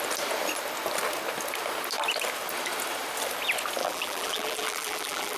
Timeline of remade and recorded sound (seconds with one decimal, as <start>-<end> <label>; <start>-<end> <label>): 0.0-3.8 recorded; 3.8-5.4 remade

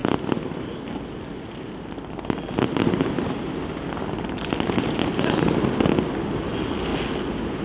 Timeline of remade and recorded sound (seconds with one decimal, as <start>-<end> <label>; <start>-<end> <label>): 0.0-7.6 recorded

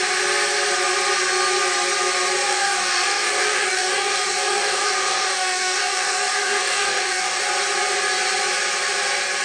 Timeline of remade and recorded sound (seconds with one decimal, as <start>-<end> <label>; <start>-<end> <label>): 0.0-2.5 recorded; 2.5-7.4 remade; 7.4-9.4 recorded

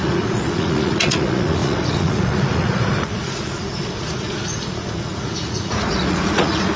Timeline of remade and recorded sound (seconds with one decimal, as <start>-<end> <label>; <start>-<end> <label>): 0.0-6.8 remade

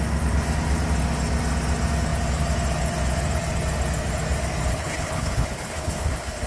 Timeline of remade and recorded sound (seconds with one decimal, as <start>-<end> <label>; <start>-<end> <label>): 0.0-4.7 recorded; 4.7-6.5 remade

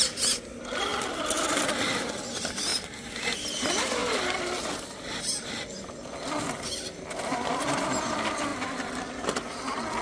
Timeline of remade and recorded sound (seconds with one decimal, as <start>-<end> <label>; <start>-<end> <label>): 0.0-10.0 recorded

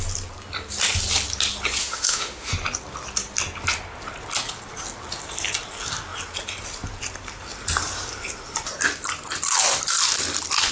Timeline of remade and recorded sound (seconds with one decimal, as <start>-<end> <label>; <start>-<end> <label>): 0.0-1.8 recorded; 1.8-2.5 remade; 2.5-10.7 recorded

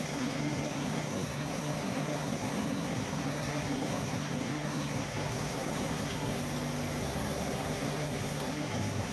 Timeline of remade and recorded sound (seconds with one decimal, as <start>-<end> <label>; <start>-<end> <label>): 0.0-6.4 remade; 6.4-7.0 recorded; 7.0-9.1 remade